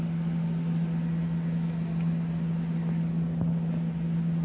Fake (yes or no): no